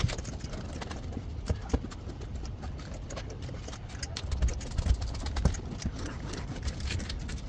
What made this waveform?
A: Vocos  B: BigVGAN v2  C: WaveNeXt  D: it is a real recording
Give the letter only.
D